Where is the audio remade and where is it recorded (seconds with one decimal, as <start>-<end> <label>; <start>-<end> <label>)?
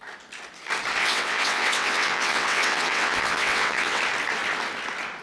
0.0-1.0 recorded; 1.0-4.0 remade; 4.0-5.2 recorded